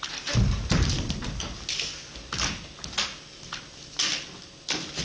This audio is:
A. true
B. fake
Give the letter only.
A